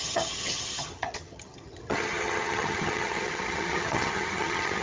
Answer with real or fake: fake